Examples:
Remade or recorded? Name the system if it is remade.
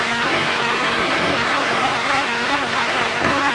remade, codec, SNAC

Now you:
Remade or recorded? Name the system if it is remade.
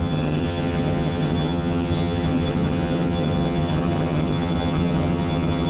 remade, vocoder, HiFi-GAN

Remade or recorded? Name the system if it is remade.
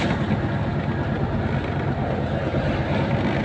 recorded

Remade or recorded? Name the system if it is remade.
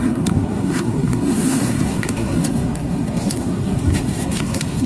remade, codec, SNAC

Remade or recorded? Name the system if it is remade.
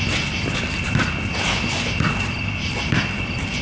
recorded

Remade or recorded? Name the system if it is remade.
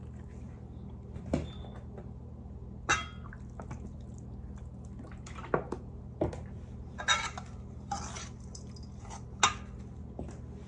recorded